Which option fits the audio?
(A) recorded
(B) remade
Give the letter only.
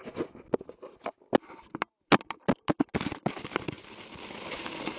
A